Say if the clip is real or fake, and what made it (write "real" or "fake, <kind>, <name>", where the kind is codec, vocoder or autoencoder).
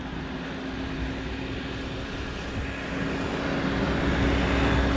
real